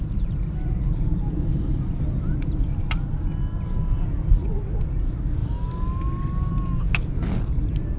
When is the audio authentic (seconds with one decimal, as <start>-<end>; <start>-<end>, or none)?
0.0-8.0